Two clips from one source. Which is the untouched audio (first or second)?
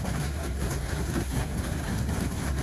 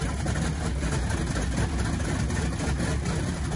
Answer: second